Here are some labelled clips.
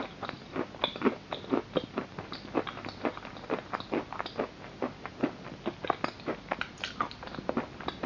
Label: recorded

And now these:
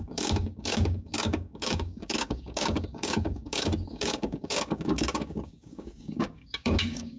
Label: remade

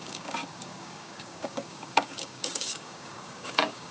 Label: remade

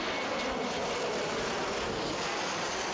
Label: recorded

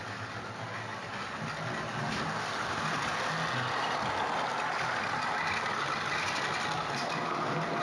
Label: recorded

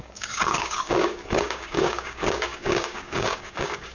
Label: remade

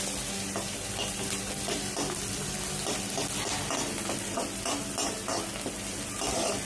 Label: recorded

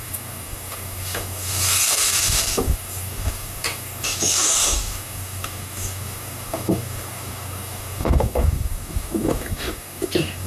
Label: remade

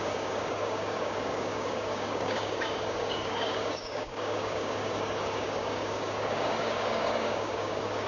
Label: remade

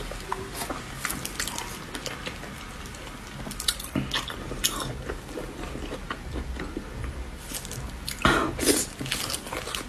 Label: recorded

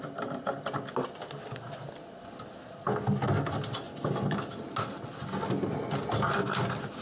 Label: recorded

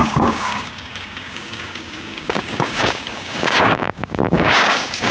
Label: remade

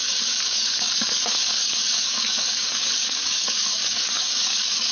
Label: remade